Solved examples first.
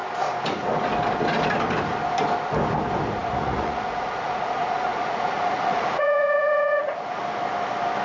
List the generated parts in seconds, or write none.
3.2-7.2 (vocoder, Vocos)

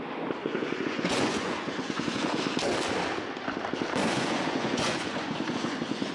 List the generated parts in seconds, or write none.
0.4-2.4 (vocoder, Vocos); 4.0-6.1

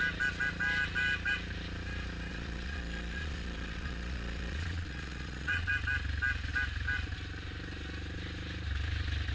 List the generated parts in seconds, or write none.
2.3-5.7 (vocoder, Vocos)

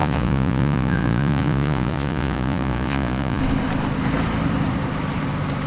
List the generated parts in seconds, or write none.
0.0-3.4 (vocoder, Vocos)

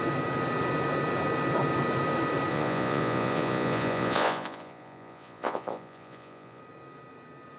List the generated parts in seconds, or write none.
2.5-6.6 (vocoder, Vocos)

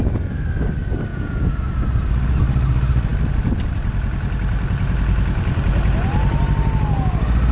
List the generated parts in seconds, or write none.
1.1-1.7 (vocoder, Vocos)

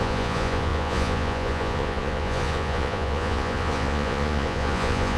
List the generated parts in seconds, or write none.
0.0-5.2 (vocoder, Vocos)